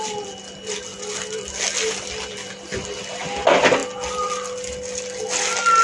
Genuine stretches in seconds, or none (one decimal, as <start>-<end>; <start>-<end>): 0.0-5.8